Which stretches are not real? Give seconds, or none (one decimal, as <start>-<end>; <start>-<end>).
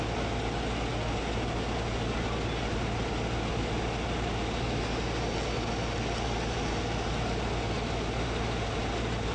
none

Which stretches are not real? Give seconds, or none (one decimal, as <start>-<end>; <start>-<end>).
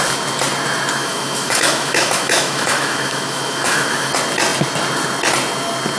1.0-4.1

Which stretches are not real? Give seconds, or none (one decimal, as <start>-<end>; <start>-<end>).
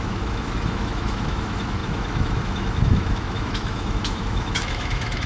0.0-5.3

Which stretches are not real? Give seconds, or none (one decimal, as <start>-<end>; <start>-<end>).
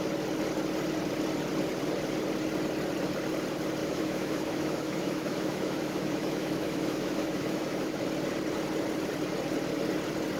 3.8-8.0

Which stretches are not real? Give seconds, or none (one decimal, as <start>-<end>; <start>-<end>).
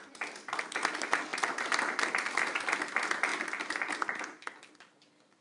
none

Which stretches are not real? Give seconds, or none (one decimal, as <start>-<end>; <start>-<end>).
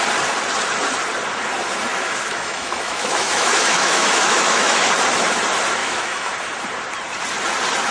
1.9-4.9; 5.8-6.3